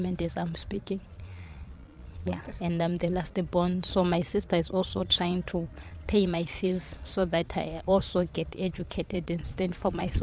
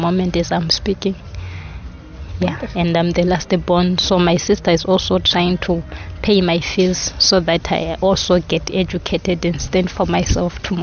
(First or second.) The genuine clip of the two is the second